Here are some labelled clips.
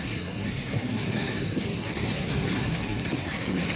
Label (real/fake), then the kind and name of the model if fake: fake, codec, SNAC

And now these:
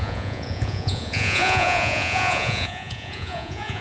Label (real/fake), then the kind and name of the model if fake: fake, vocoder, Vocos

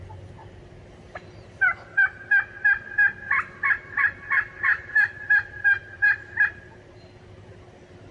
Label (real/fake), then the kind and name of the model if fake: real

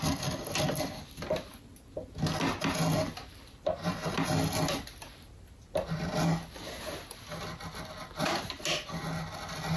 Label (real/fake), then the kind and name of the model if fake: real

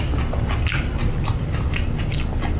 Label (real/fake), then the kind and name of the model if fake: real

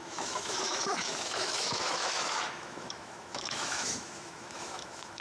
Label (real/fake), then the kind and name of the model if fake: fake, autoencoder, DAC-VAE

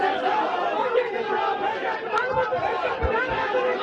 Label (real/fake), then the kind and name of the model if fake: real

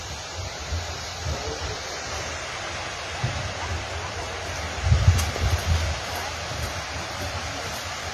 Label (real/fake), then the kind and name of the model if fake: real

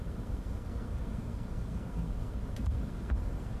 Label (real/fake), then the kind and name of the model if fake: fake, codec, SNAC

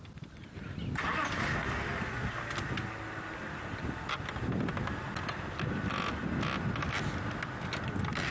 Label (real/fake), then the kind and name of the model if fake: real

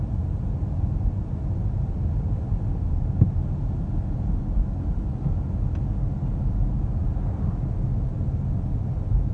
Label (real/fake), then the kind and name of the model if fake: real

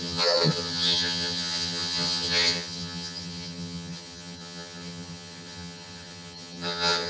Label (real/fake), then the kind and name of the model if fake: fake, vocoder, HiFi-GAN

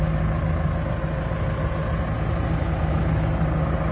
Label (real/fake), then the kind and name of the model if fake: real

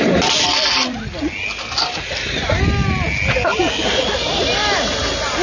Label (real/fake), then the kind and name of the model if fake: real